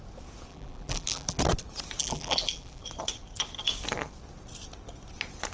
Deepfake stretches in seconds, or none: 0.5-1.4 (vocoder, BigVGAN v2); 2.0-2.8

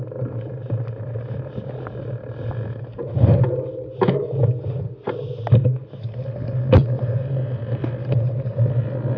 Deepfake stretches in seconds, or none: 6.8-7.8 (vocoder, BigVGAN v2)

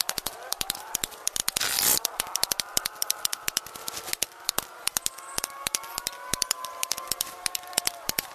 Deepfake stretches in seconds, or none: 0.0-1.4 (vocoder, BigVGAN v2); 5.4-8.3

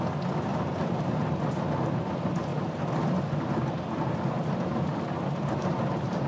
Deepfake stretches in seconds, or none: 0.5-1.1 (vocoder, BigVGAN v2)